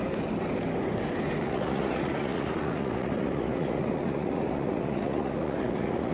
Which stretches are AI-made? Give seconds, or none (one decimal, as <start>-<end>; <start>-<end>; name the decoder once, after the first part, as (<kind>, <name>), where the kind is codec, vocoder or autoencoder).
1.4-6.1 (vocoder, Vocos)